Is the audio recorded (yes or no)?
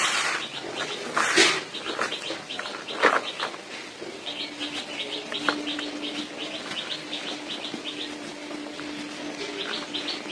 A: yes